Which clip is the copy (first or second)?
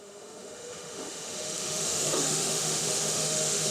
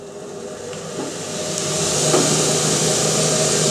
first